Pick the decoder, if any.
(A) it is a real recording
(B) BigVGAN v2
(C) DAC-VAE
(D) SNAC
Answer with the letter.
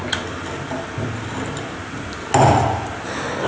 A